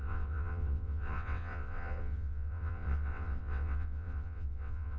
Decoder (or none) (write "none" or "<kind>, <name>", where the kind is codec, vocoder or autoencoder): vocoder, WaveNeXt